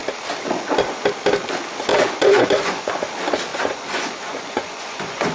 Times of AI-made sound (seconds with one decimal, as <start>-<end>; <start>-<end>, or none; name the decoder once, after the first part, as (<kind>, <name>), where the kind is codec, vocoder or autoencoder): 1.9-2.9 (vocoder, Vocos); 3.5-5.3